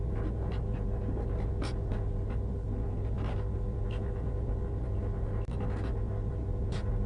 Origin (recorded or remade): recorded